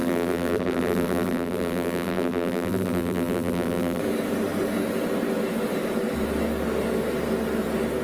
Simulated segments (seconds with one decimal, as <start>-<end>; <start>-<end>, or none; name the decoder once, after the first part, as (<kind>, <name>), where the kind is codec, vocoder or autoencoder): 0.0-4.0 (vocoder, BigVGAN v2)